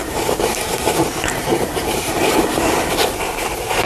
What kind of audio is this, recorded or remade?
remade